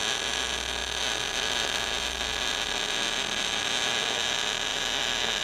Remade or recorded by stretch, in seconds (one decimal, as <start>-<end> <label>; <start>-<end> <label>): 0.0-5.4 recorded